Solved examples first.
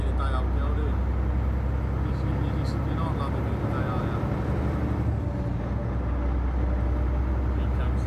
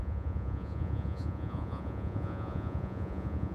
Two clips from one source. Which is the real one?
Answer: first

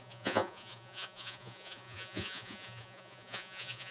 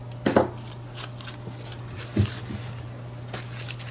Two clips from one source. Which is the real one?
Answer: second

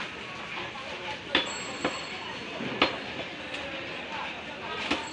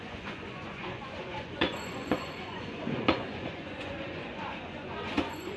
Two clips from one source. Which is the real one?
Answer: first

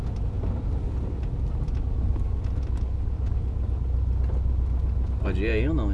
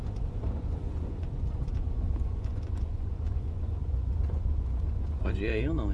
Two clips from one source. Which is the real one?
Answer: first